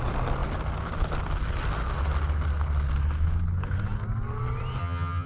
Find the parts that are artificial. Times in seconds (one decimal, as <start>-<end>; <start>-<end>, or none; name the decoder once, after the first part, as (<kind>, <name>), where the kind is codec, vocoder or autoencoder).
4.8-5.3 (vocoder, HiFi-GAN)